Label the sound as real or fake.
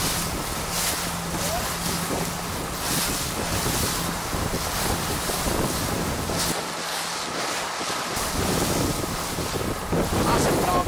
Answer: real